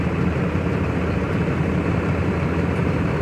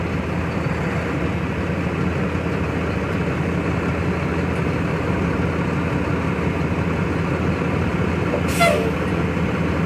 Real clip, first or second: second